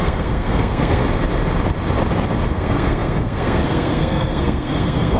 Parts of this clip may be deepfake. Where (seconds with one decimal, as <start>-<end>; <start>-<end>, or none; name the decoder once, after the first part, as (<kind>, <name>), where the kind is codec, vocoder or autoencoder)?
0.0-1.0 (codec, SNAC); 2.5-5.2